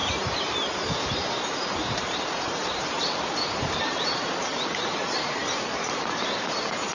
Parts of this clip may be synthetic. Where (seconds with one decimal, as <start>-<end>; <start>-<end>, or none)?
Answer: 0.0-6.9

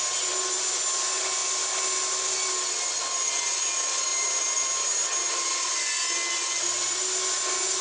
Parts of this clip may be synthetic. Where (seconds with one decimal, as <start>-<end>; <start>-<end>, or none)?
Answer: none

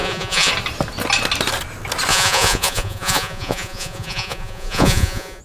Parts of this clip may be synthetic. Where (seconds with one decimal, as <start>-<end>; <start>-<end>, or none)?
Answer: 0.0-0.5; 2.1-5.4

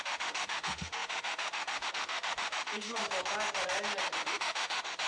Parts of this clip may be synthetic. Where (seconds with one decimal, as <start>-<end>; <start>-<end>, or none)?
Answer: 0.0-3.0; 4.2-5.1

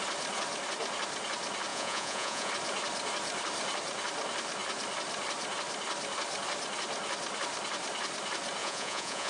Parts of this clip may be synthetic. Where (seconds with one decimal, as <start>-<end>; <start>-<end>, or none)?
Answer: 1.7-2.5; 8.6-9.3

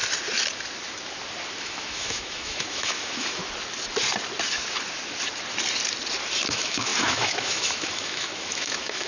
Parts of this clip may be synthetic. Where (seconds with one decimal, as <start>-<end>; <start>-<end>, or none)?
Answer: 1.6-3.4; 6.5-9.1

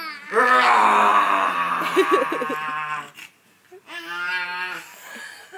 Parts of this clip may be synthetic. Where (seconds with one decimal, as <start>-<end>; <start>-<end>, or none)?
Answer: none

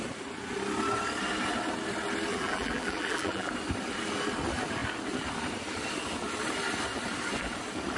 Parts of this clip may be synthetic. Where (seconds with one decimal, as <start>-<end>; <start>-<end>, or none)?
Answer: 2.3-3.5